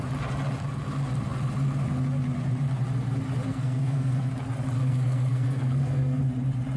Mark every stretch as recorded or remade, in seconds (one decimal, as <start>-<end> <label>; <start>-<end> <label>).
0.0-3.5 recorded; 3.5-4.3 remade; 4.3-4.8 recorded; 4.8-6.2 remade; 6.2-6.8 recorded